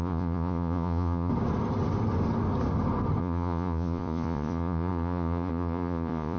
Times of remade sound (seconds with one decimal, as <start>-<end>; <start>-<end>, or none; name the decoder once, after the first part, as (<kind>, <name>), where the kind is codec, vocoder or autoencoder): 0.0-1.3 (vocoder, Vocos); 3.2-6.4